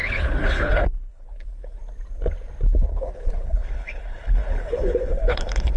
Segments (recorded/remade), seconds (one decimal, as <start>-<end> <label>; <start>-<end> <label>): 0.0-1.8 remade; 1.8-2.9 recorded; 2.9-5.8 remade